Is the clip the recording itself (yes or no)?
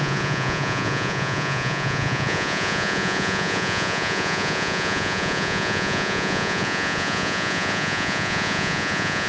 no